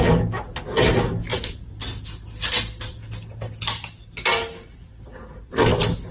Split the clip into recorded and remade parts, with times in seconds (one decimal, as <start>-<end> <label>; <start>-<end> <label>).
0.0-6.1 recorded